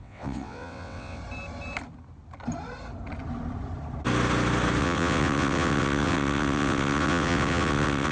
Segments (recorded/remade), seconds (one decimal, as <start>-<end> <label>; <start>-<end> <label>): 0.0-1.2 remade; 1.2-4.8 recorded; 4.8-8.1 remade